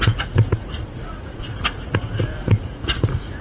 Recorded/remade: remade